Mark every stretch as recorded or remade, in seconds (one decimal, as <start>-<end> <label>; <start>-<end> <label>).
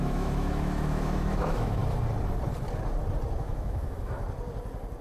0.0-1.8 remade; 1.8-3.4 recorded; 3.4-4.2 remade; 4.2-5.0 recorded